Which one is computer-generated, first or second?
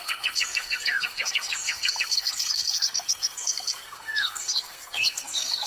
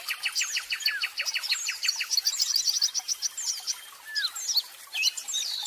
first